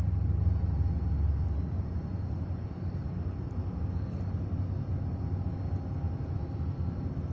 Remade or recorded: recorded